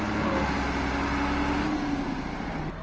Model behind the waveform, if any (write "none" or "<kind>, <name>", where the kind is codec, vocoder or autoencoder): none